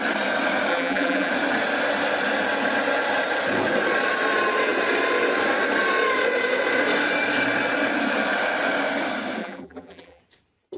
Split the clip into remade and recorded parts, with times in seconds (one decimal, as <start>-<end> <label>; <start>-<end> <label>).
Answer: 0.0-0.7 recorded; 0.7-1.3 remade; 1.3-9.4 recorded; 9.4-10.2 remade; 10.2-10.8 recorded